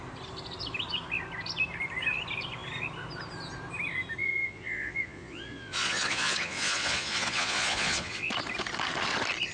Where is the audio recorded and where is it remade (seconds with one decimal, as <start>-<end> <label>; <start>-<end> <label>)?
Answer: 0.0-4.2 recorded; 4.2-8.3 remade; 8.3-9.5 recorded